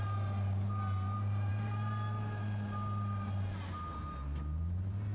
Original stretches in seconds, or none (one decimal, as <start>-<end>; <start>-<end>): 0.0-5.1